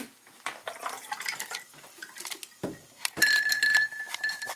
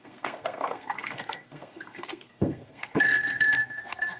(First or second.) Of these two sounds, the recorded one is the first